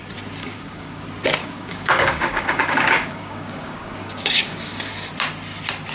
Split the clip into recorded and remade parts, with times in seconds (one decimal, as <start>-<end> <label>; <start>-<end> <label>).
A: 0.0-0.4 recorded; 0.4-1.0 remade; 1.0-1.4 recorded; 1.4-4.9 remade; 4.9-5.9 recorded